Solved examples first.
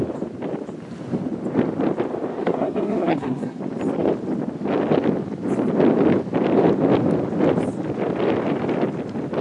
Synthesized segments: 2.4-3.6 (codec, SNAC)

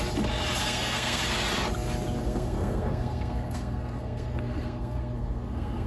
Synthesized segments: 0.6-1.2 (codec, SNAC); 2.2-5.9